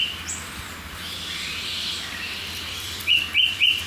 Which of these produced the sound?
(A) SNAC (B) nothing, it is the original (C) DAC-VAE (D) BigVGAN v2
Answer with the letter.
D